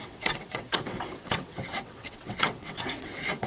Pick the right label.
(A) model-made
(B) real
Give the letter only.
A